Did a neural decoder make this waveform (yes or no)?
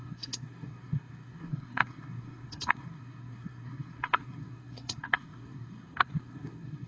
yes